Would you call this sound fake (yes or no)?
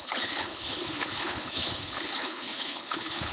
yes